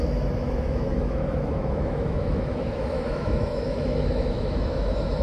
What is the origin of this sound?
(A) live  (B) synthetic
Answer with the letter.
B